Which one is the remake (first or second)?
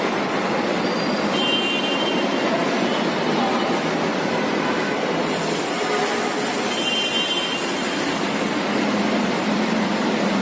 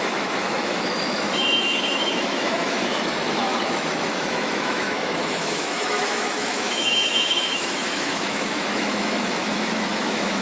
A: second